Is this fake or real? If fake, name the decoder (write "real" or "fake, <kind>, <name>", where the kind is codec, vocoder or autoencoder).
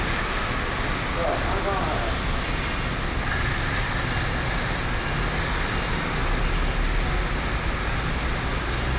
real